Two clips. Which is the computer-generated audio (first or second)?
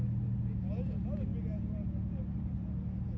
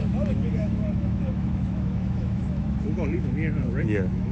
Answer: second